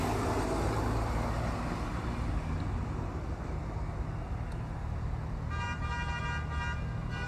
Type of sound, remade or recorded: recorded